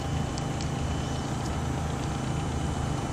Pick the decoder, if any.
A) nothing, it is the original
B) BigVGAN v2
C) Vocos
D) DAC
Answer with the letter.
A